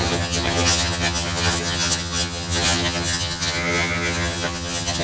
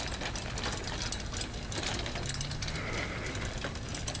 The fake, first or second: first